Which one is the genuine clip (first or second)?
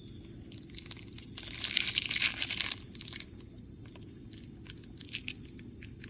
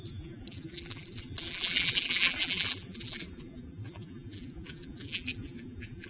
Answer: first